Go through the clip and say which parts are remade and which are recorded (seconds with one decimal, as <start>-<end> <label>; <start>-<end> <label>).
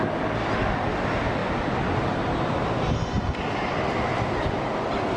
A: 0.0-5.2 recorded